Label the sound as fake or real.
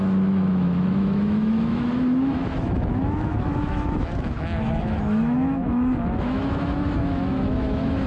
fake